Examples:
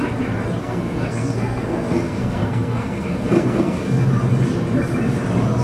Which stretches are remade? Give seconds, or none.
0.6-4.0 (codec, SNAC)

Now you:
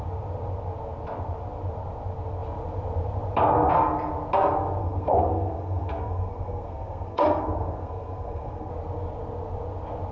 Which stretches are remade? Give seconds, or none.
4.8-8.7 (codec, SNAC)

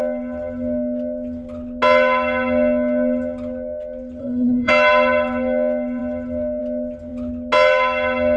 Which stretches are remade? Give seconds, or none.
4.2-4.7 (codec, SNAC)

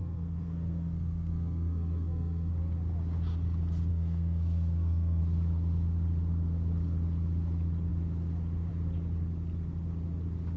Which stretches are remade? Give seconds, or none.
0.0-2.5 (codec, SNAC); 3.9-5.2

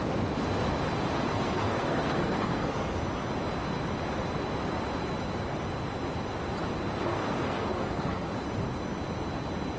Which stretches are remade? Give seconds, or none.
1.3-3.0 (codec, SNAC); 7.1-8.3